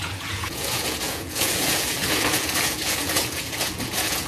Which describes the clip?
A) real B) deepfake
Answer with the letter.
B